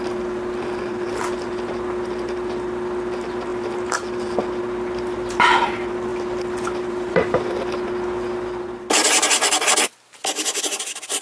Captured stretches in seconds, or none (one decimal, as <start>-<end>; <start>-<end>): 0.0-6.1; 7.5-11.2